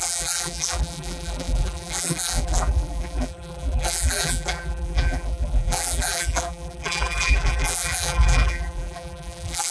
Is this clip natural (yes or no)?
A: no